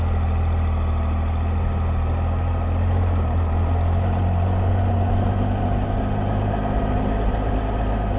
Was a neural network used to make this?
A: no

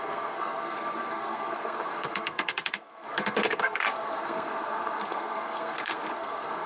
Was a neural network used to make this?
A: yes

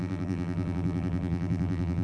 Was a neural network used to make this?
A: yes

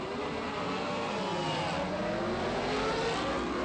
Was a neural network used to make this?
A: no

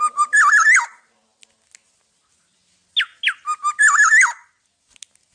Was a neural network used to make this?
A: no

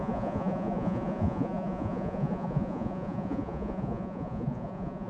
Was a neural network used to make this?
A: yes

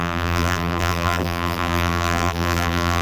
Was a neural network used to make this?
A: yes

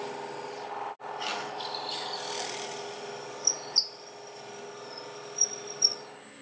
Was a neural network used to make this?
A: no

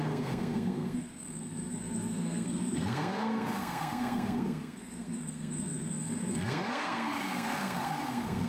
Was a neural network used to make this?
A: yes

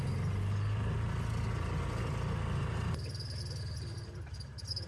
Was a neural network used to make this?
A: no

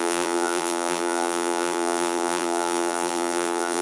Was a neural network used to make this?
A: yes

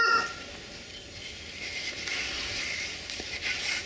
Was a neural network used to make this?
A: no